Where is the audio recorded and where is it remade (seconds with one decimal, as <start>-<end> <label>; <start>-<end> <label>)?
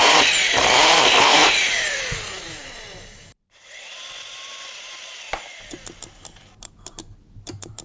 0.0-1.4 recorded; 1.4-5.7 remade; 5.7-7.8 recorded